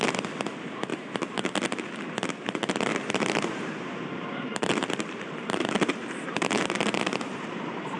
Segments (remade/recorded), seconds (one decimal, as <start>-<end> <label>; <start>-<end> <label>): 0.0-0.9 recorded; 0.9-1.5 remade; 1.5-2.9 recorded; 2.9-8.0 remade